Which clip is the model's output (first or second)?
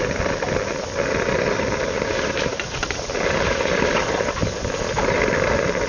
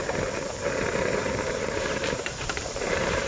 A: second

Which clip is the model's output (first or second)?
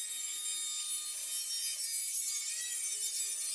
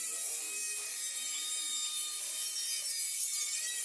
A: second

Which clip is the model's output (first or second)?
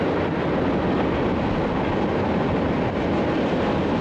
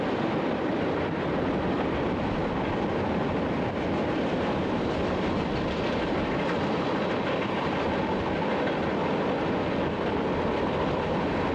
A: second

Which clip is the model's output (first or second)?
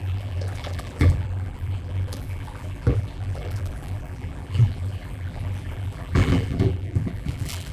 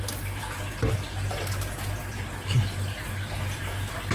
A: first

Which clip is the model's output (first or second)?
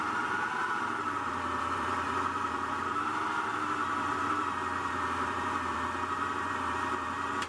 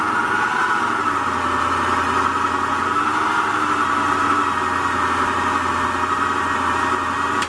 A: first